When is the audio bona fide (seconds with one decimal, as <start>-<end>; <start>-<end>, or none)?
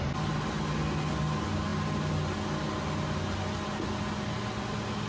0.0-5.1